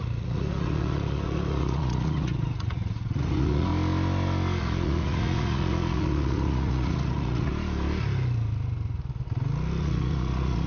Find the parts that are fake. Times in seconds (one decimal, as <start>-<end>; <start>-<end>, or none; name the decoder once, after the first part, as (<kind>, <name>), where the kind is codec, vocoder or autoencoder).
0.0-3.7 (vocoder, Vocos); 4.6-7.5; 9.8-10.7